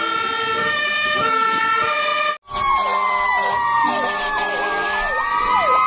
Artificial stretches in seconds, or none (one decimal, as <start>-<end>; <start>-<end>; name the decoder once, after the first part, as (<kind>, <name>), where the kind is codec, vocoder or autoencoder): 0.6-1.6 (autoencoder, DAC-VAE)